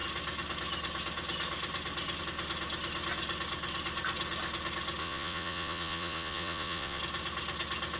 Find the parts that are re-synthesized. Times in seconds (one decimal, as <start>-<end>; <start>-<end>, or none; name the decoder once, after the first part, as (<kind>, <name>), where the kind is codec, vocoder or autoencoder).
5.0-7.0 (vocoder, Vocos)